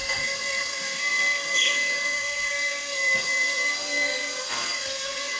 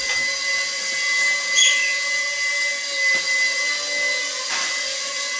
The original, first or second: second